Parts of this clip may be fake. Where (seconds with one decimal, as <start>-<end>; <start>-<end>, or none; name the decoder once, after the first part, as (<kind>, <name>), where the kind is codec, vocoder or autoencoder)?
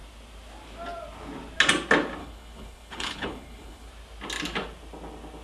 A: 2.2-3.9 (codec, HILCodec)